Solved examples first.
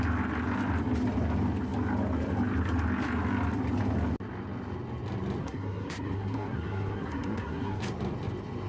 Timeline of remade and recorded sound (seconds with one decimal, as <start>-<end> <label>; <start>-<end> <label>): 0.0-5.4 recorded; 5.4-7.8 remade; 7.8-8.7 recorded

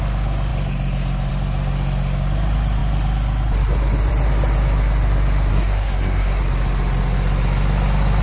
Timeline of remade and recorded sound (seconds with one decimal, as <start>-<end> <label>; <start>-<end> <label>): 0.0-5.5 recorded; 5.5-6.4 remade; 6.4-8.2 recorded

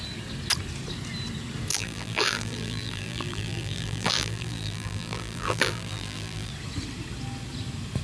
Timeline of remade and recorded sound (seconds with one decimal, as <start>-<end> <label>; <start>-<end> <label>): 0.0-1.7 recorded; 1.7-6.5 remade; 6.5-8.0 recorded

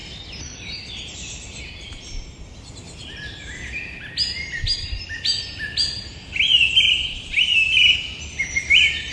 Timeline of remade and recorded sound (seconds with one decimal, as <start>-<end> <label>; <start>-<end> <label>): 0.0-9.1 recorded